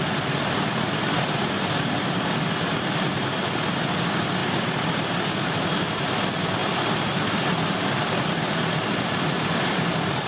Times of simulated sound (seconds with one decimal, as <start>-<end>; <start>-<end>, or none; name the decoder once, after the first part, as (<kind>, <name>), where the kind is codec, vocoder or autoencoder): 0.0-10.3 (vocoder, BigVGAN v2)